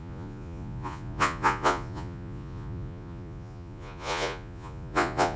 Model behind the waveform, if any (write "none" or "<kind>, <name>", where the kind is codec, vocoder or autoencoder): vocoder, Vocos